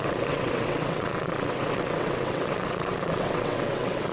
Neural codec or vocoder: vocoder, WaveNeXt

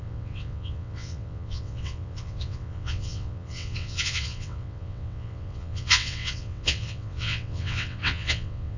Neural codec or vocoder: vocoder, WaveNeXt